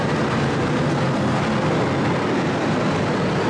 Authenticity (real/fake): real